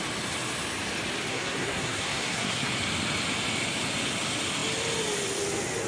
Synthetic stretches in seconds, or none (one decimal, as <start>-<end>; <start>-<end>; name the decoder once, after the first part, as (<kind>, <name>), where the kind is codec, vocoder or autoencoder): 1.3-2.7 (codec, SNAC)